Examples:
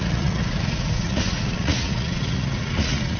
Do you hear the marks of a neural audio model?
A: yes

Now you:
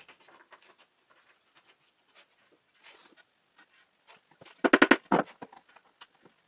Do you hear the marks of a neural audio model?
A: no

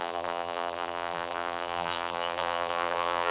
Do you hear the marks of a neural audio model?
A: yes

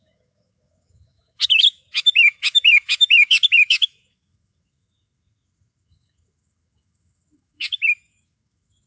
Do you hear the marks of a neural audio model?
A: yes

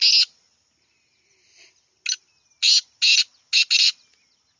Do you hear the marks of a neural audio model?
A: no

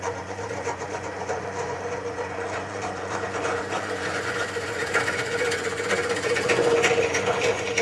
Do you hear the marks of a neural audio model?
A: yes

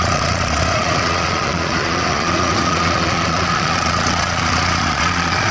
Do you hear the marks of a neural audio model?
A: yes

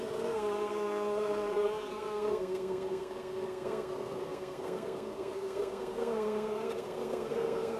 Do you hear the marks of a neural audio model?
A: yes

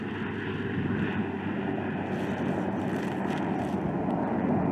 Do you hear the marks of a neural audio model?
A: no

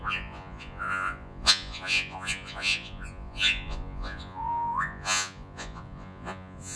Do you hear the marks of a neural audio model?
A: yes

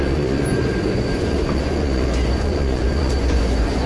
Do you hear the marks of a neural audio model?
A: yes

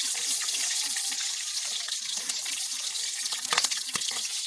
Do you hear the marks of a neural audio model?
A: yes